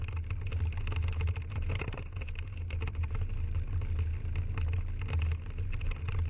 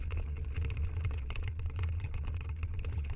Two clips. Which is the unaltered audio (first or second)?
first